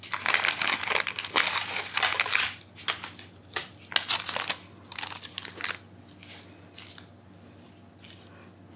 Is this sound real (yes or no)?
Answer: yes